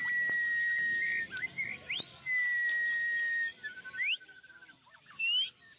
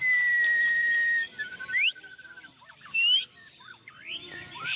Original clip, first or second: first